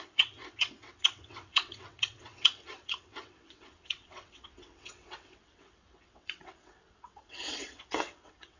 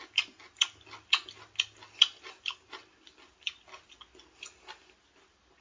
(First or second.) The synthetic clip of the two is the first